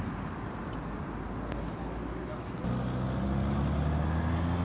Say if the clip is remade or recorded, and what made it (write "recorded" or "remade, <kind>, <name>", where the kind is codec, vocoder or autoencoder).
recorded